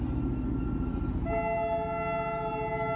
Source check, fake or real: real